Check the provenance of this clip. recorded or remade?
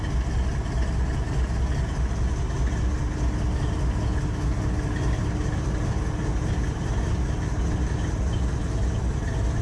recorded